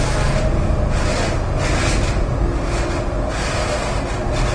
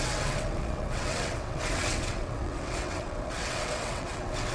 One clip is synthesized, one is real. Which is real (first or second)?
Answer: first